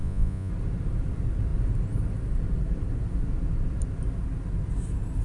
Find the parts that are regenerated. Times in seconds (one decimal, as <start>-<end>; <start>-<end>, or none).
0.0-0.5